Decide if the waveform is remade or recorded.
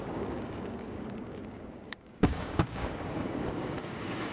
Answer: remade